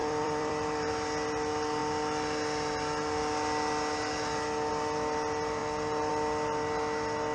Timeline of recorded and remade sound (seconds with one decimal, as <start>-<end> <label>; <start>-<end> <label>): 0.0-0.9 remade; 0.9-7.3 recorded

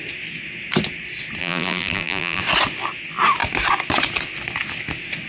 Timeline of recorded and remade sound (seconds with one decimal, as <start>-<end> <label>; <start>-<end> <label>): 0.0-1.4 recorded; 1.4-2.4 remade; 2.4-5.3 recorded

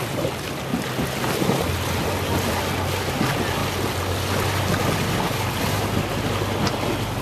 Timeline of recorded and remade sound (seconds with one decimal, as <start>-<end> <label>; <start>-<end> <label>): 0.0-0.7 remade; 0.7-2.5 recorded; 2.5-3.6 remade; 3.6-6.6 recorded; 6.6-7.2 remade

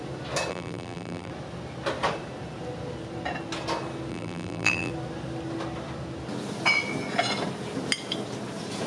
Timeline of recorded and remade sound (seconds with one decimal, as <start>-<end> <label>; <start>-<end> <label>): 0.0-0.5 recorded; 0.5-1.3 remade; 1.3-4.1 recorded; 4.1-4.9 remade; 4.9-8.9 recorded

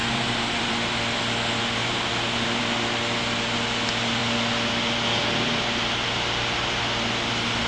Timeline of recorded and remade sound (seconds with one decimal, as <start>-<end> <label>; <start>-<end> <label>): 0.0-0.7 remade; 0.7-1.8 recorded; 1.8-2.6 remade; 2.6-7.7 recorded